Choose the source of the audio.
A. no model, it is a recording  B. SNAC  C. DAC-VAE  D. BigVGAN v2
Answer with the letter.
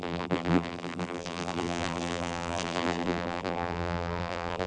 D